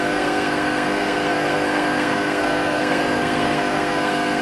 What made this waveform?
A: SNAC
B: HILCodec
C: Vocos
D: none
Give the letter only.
A